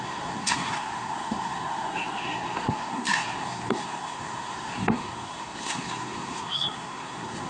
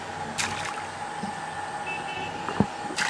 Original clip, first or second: second